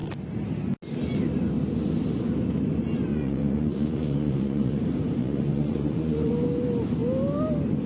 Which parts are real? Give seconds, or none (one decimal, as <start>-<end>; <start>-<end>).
0.0-3.1; 4.8-5.2; 6.3-7.9